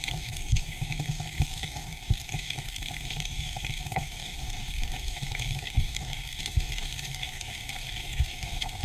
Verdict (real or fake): fake